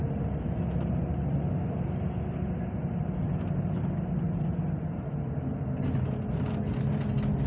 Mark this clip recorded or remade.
recorded